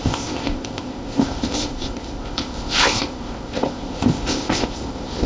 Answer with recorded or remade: remade